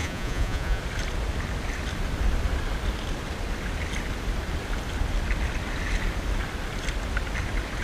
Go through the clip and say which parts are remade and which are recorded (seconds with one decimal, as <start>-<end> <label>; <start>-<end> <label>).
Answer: 0.0-0.8 remade; 0.8-7.8 recorded